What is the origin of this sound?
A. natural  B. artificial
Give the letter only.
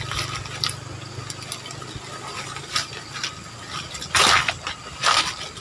A